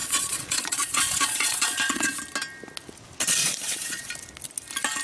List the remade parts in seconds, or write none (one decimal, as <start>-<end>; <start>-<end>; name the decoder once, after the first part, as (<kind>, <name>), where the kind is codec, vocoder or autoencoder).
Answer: 0.0-2.2 (vocoder, Vocos); 3.4-4.1